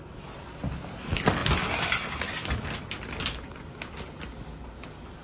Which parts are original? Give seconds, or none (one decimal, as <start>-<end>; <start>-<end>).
0.0-5.2